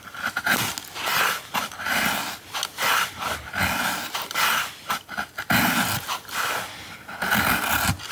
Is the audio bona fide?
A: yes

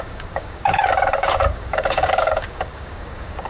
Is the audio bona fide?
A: no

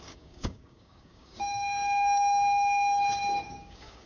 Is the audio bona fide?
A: no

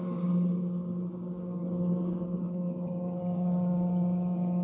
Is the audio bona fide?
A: no